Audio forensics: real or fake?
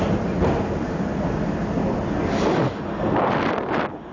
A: real